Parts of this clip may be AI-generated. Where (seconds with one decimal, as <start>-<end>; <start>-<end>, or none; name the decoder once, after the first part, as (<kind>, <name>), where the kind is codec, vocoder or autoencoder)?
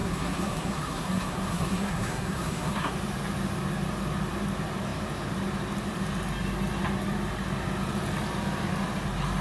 0.0-2.9 (codec, SNAC)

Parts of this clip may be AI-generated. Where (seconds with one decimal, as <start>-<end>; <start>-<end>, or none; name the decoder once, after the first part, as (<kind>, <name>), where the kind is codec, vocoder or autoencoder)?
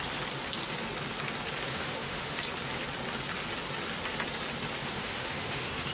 1.7-2.4 (autoencoder, DAC-VAE); 4.8-5.9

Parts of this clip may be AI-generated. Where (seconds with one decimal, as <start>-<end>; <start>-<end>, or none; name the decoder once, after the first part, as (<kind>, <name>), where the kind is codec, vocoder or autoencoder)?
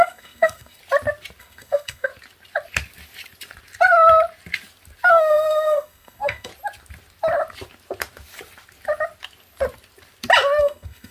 0.0-0.8 (codec, SNAC); 1.4-2.1; 5.1-6.5; 10.6-11.1